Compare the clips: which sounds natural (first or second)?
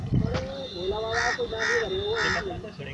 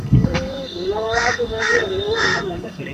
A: first